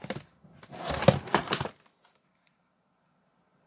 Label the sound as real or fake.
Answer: real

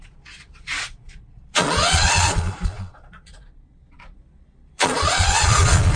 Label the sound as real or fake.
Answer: fake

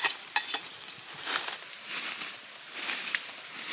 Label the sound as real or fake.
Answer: real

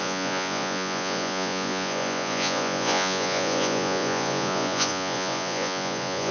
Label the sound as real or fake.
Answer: fake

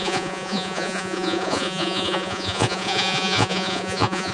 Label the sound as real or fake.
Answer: fake